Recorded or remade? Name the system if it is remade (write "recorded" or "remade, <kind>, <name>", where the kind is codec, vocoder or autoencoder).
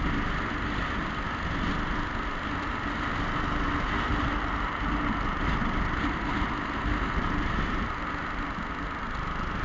recorded